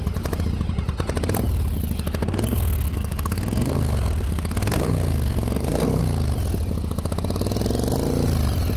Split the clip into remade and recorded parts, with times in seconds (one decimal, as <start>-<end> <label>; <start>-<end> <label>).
0.0-2.2 recorded; 2.2-6.0 remade; 6.0-8.8 recorded